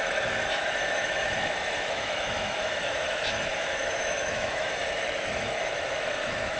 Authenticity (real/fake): fake